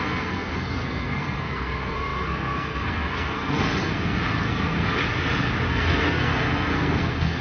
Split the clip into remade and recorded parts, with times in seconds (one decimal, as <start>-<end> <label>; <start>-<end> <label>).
0.0-5.0 remade; 5.0-5.7 recorded; 5.7-7.4 remade